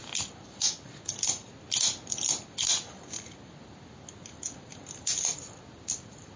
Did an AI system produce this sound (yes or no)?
no